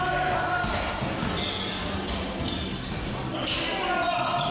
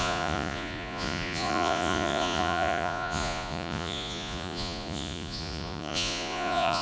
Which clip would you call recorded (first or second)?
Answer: first